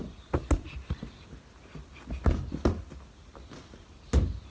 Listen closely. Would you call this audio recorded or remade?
recorded